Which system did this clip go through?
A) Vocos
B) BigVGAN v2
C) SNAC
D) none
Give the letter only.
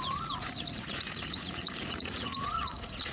A